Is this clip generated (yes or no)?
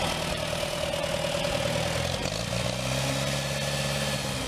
no